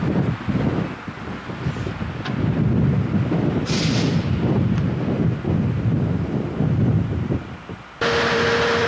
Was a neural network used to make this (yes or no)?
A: no